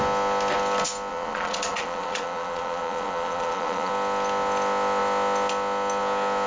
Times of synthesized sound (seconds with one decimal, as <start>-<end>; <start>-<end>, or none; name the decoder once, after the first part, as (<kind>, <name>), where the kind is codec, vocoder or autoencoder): 1.1-3.9 (vocoder, Vocos)